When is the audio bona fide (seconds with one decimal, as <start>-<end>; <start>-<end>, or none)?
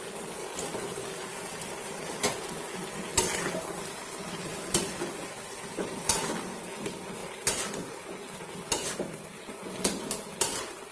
0.0-10.9